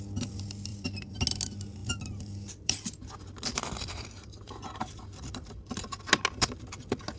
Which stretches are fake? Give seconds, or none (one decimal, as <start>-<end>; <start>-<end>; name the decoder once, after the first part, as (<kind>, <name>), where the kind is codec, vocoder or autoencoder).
0.7-1.2 (vocoder, BigVGAN v2); 1.8-6.1